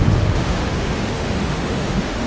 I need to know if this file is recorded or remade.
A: remade